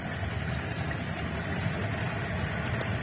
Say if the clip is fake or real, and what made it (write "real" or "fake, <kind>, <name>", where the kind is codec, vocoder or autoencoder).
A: real